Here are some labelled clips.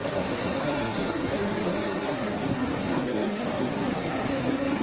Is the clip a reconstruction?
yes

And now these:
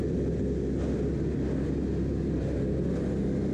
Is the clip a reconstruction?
no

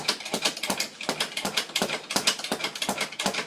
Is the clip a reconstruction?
no